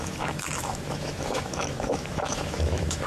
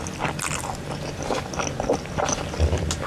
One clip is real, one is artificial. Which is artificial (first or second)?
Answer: first